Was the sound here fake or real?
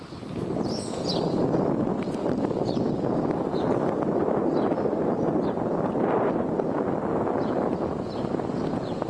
real